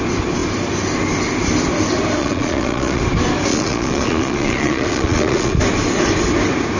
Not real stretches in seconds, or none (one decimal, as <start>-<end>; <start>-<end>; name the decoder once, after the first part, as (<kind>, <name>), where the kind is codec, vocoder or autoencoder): 2.2-3.0 (vocoder, Vocos); 3.5-5.6